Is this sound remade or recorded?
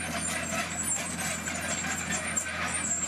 recorded